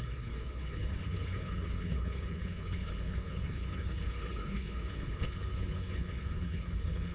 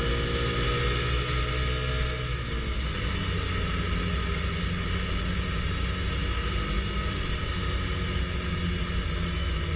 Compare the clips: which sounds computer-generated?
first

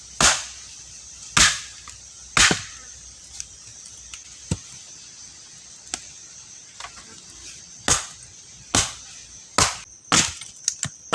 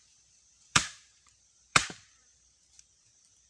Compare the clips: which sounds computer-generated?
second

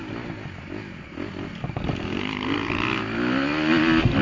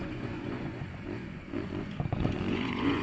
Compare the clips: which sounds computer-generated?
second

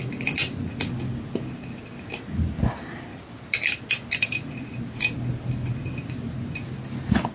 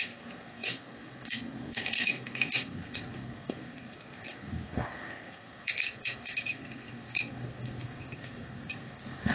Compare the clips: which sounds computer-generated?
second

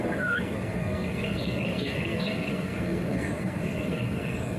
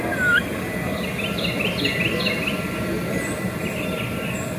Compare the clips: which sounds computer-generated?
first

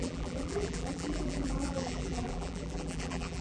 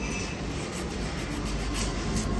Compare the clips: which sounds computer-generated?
first